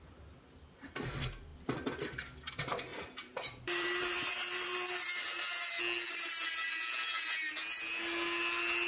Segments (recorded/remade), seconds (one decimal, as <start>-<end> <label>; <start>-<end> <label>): 0.0-2.9 recorded; 2.9-5.8 remade; 5.8-8.9 recorded